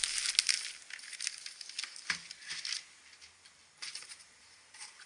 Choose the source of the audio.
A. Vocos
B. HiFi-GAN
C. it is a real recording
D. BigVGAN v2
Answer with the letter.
C